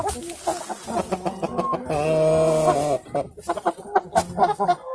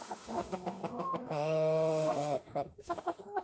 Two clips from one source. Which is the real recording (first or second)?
first